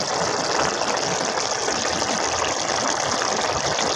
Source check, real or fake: real